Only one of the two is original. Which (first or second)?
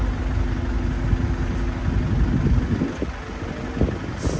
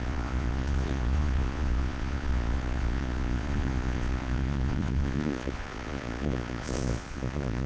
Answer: first